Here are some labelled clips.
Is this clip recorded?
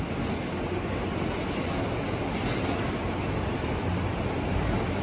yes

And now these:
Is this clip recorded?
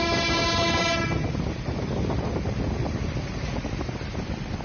yes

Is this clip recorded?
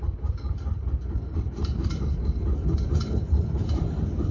yes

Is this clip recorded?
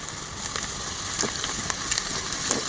yes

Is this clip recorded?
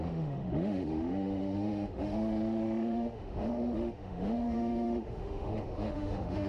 no